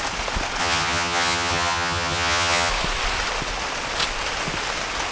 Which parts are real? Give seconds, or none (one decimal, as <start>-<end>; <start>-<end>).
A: 0.0-0.6; 2.7-5.1